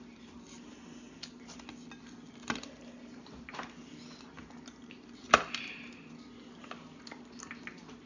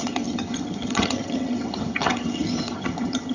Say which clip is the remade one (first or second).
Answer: second